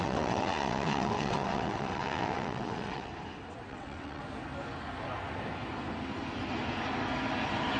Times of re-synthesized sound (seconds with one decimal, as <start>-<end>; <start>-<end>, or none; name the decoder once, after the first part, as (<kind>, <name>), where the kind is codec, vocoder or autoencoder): 0.0-3.1 (vocoder, WaveNeXt); 3.7-4.2